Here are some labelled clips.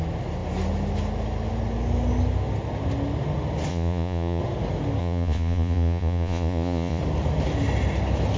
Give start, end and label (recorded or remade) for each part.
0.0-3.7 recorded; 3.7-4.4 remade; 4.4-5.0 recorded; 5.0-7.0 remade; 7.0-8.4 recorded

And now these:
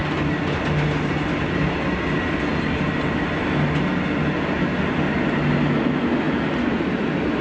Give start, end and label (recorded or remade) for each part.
0.0-7.4 recorded

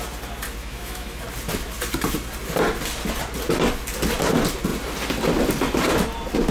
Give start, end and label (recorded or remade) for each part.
0.0-0.6 recorded; 0.6-1.2 remade; 1.2-6.5 recorded

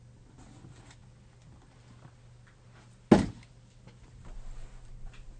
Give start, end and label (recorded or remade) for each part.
0.0-5.4 recorded

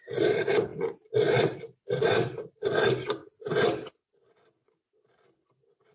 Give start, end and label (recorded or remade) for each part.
0.0-3.2 remade; 3.2-4.0 recorded; 4.0-5.9 remade

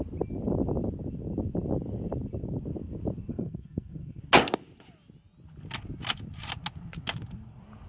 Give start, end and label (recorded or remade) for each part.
0.0-3.3 recorded; 3.3-4.2 remade; 4.2-7.9 recorded

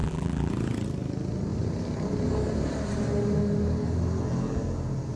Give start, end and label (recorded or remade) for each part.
0.0-0.5 remade; 0.5-5.2 recorded